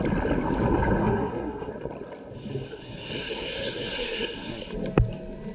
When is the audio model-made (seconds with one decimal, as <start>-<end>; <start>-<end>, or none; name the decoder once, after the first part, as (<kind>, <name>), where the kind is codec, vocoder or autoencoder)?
1.0-1.7 (codec, SNAC); 2.7-4.7